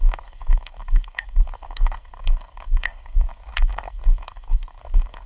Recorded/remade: remade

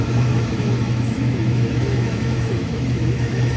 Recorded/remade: remade